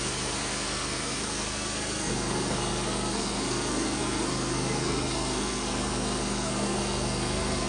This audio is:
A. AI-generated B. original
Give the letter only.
A